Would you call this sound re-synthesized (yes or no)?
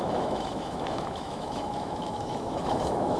yes